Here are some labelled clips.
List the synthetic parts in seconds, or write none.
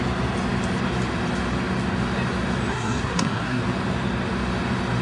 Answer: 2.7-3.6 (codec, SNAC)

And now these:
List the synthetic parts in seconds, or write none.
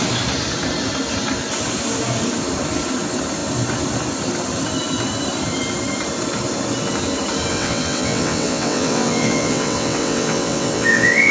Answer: 7.5-11.3 (vocoder, WaveNeXt)